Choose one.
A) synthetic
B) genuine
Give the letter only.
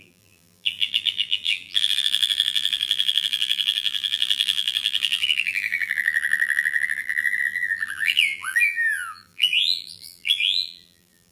A